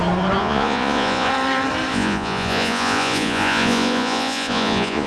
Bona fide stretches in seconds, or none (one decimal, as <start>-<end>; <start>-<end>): 0.0-0.4; 1.3-1.9